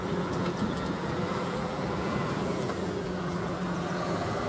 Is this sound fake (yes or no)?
yes